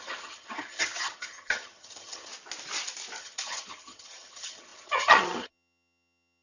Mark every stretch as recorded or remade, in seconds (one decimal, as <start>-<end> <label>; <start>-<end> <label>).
0.0-2.3 remade; 2.3-3.2 recorded; 3.2-6.4 remade

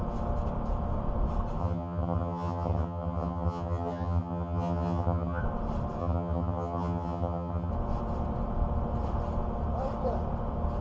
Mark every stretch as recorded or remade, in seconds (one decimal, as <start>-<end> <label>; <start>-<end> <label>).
0.0-1.6 recorded; 1.6-5.4 remade; 5.4-6.0 recorded; 6.0-7.7 remade; 7.7-10.8 recorded

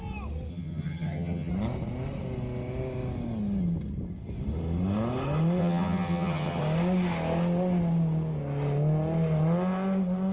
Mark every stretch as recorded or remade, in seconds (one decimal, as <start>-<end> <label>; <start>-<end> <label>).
0.0-0.5 recorded; 0.5-1.5 remade; 1.5-5.6 recorded; 5.6-6.6 remade; 6.6-10.3 recorded